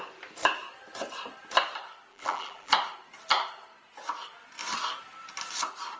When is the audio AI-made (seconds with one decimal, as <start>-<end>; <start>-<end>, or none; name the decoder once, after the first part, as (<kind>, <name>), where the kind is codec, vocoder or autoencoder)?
2.1-2.7 (vocoder, BigVGAN v2)